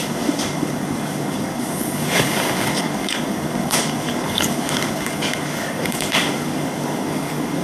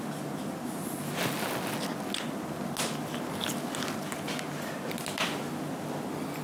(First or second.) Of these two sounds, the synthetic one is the first